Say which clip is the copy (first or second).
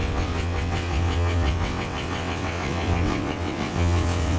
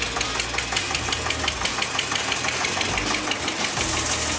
first